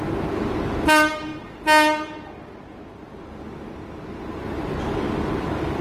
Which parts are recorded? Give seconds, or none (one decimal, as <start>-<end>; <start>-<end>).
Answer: 0.0-5.8